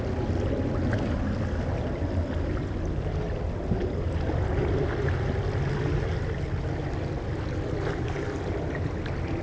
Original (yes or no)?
yes